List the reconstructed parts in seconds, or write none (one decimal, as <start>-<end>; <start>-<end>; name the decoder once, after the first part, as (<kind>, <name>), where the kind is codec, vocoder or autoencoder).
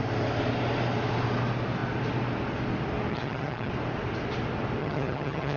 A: 3.1-3.7 (vocoder, HiFi-GAN); 4.8-5.6